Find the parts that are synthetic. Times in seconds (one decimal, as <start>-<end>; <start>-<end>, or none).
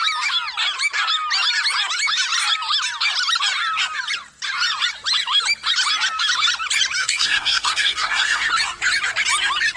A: 7.0-8.5